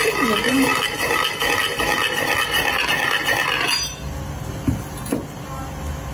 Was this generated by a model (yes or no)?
no